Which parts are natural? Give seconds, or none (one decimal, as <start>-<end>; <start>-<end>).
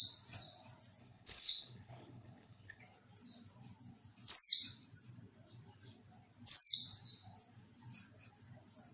0.0-1.0; 2.8-8.9